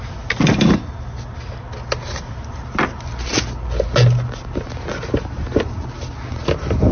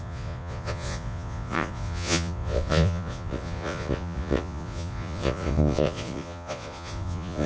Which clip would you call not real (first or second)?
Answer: second